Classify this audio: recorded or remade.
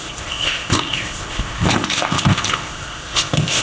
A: remade